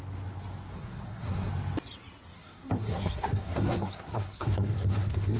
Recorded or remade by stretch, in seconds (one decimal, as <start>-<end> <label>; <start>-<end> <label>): 0.0-0.7 recorded; 0.7-1.5 remade; 1.5-2.3 recorded; 2.3-5.4 remade